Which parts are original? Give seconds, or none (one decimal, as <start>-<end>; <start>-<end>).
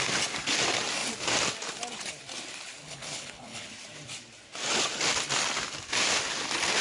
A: 0.0-2.8; 3.7-6.8